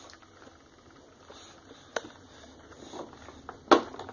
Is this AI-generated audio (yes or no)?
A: no